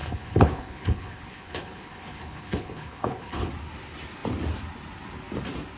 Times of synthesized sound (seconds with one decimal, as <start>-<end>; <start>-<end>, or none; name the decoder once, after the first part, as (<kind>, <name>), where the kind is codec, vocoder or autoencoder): 0.0-3.5 (codec, HILCodec)